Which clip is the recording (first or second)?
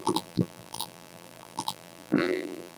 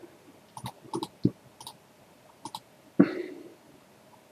second